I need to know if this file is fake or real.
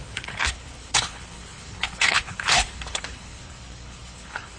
fake